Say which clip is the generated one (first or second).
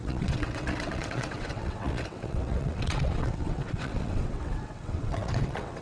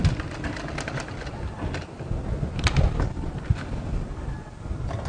first